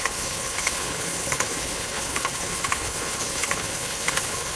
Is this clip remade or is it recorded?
remade